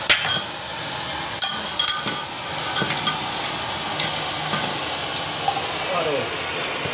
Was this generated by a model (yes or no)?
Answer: no